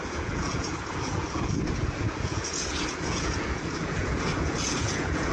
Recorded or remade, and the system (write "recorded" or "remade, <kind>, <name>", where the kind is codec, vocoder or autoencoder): remade, vocoder, Vocos